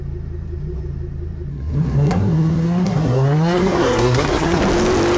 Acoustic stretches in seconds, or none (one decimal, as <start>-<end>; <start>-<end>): 0.0-1.5; 4.6-5.2